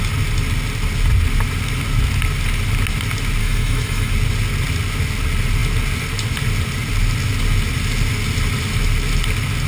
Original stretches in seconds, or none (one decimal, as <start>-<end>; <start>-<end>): 0.0-3.4; 4.1-9.7